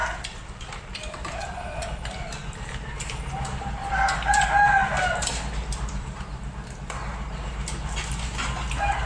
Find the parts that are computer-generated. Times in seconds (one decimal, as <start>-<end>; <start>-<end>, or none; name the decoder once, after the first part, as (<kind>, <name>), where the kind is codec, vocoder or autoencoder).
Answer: none